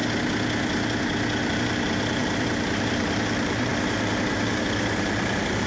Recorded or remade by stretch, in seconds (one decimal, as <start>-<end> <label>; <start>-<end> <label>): 0.0-1.5 recorded; 1.5-5.7 remade